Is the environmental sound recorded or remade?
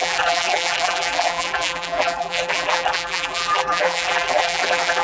remade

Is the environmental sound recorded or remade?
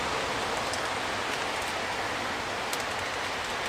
recorded